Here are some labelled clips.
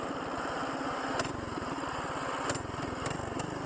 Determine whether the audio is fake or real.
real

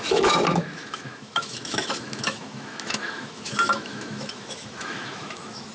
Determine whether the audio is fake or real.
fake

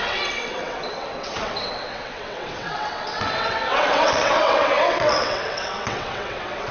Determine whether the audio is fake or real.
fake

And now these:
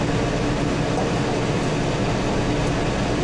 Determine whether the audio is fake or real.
real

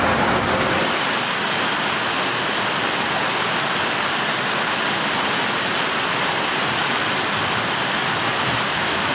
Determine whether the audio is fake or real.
real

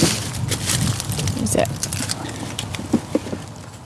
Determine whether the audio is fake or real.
real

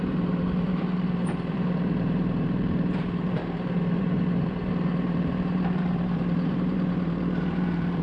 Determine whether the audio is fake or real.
fake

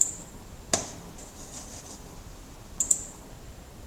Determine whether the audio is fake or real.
real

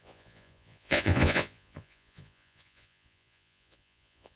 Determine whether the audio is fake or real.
fake